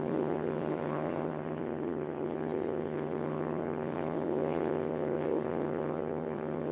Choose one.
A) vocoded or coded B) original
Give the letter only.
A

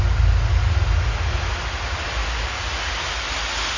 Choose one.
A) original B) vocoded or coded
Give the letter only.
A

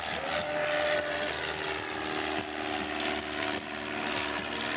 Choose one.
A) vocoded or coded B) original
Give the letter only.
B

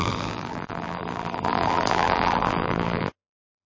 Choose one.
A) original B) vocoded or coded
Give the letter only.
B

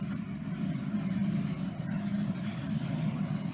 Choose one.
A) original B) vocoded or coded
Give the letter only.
A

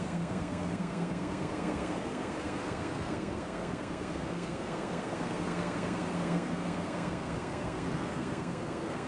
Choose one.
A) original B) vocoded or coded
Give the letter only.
B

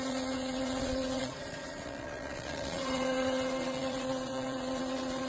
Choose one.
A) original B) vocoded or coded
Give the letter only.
B